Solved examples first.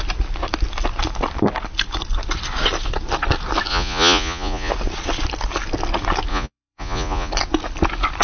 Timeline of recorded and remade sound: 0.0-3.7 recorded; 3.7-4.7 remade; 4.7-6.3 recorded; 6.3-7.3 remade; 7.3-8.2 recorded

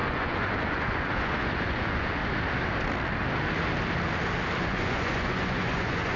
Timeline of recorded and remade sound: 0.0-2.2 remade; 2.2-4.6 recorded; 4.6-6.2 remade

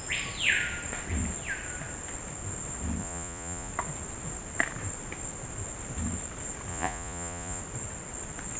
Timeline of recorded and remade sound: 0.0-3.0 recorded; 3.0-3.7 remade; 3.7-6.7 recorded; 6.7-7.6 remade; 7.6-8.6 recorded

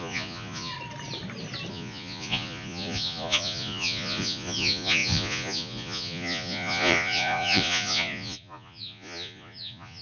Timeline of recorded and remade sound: 0.0-0.7 remade; 0.7-1.7 recorded; 1.7-10.0 remade

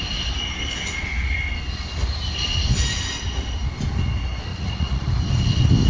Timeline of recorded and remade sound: 0.0-4.5 recorded; 4.5-5.1 remade; 5.1-5.9 recorded

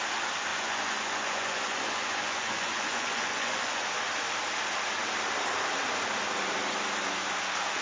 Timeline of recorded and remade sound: 0.0-0.5 recorded; 0.5-3.9 remade; 3.9-7.8 recorded

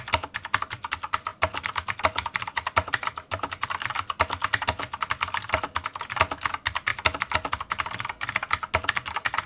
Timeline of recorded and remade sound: 0.0-9.5 recorded

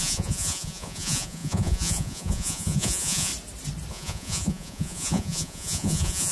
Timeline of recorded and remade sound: 0.0-3.3 remade; 3.3-3.9 recorded; 3.9-6.3 remade